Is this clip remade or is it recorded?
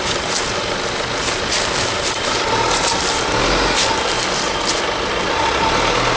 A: recorded